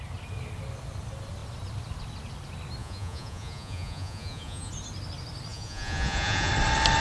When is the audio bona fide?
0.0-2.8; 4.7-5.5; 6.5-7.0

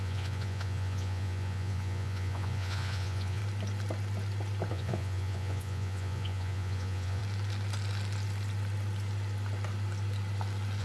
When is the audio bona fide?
3.4-4.7; 7.2-10.8

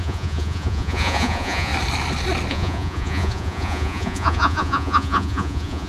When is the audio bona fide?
1.7-2.5

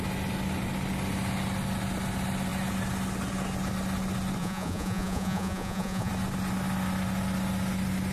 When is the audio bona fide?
0.0-4.4; 6.1-8.1